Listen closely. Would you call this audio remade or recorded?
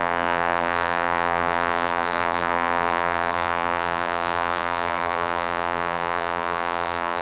remade